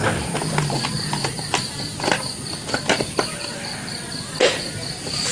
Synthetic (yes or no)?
no